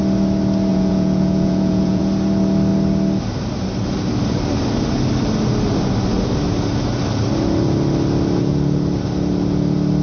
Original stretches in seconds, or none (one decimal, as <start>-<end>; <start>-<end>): 0.0-0.7; 2.0-10.0

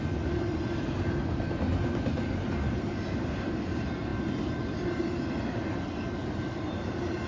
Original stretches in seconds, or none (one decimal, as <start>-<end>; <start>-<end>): 0.0-7.3

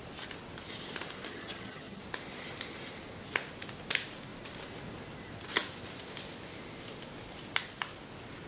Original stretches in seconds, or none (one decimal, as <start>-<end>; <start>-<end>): 0.0-1.3; 2.0-8.5